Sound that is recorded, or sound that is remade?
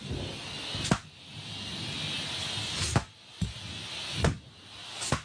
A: recorded